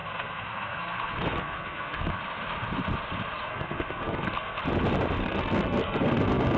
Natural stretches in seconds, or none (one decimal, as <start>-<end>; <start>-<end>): 2.2-3.5; 4.6-5.2